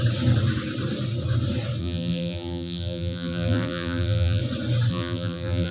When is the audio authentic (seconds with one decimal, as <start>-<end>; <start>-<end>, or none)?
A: 0.0-1.8; 4.4-4.9